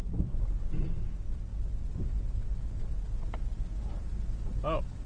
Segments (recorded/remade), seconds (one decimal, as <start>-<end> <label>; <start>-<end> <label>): 0.0-5.1 recorded